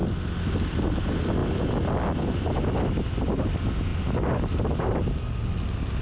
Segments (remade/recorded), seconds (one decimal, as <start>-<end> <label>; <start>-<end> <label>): 0.0-6.0 recorded